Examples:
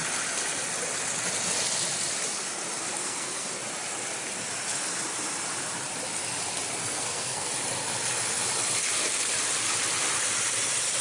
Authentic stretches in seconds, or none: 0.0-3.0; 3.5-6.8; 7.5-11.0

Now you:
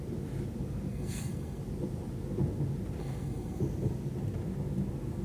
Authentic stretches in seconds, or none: 0.0-0.9; 1.6-3.0; 3.6-5.2

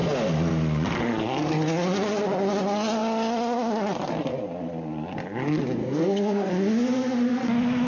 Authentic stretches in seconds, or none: 0.0-5.8; 6.5-7.9

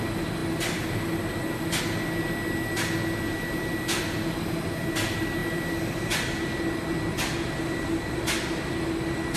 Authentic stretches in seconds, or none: 0.0-9.4

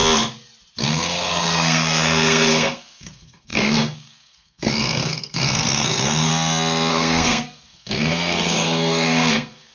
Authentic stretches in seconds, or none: 0.0-0.8; 6.3-6.9

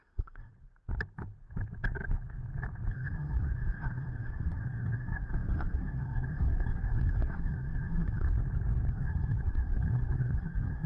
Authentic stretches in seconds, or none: 0.5-2.9; 8.4-8.9

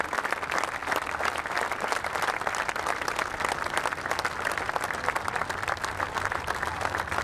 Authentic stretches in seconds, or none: 0.0-7.2

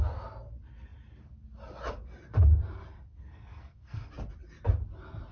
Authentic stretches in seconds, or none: 0.0-3.3; 4.1-5.3